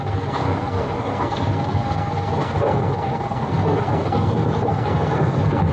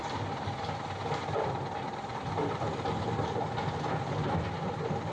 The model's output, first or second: first